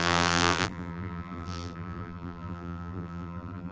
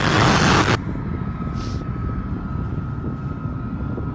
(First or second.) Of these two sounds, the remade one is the first